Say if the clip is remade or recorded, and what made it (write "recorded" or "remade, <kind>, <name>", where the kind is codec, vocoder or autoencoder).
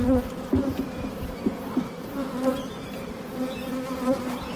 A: remade, vocoder, BigVGAN v2